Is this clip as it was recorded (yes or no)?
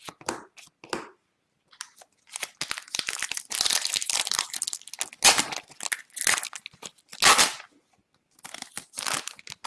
yes